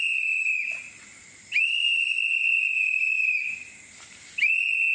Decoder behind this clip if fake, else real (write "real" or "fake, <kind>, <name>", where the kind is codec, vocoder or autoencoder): real